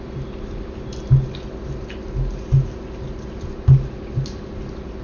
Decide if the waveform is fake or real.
real